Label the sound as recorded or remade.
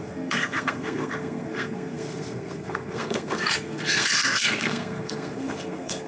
remade